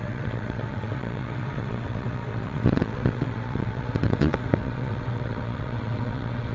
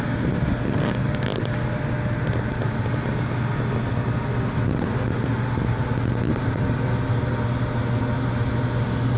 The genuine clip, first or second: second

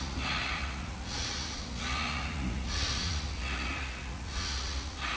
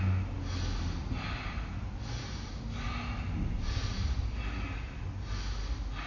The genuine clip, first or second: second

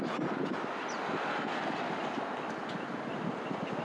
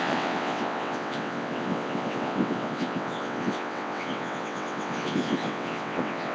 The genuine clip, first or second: first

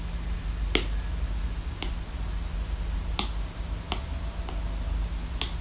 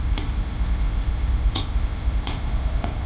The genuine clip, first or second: first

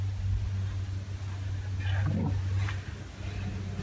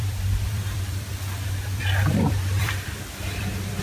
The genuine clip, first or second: first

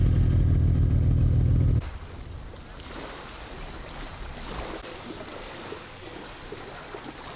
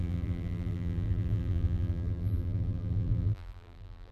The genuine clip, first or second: first